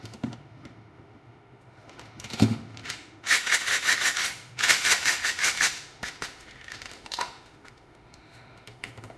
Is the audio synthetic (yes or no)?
yes